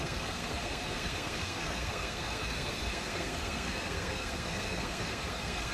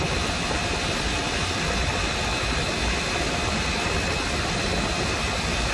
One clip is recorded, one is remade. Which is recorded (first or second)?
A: second